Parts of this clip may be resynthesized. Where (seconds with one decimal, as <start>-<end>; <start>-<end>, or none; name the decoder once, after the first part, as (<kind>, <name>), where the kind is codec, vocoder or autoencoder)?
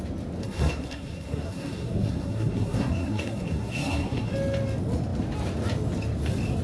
0.4-4.3 (codec, SNAC)